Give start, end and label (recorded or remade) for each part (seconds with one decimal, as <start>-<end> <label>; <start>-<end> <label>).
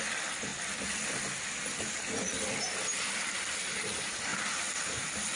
0.0-5.4 recorded